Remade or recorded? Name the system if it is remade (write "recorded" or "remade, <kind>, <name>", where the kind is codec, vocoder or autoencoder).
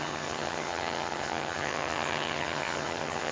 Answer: remade, vocoder, HiFi-GAN